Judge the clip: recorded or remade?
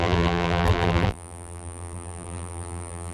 remade